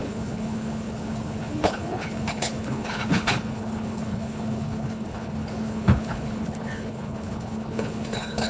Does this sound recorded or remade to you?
remade